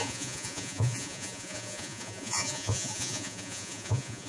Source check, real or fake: fake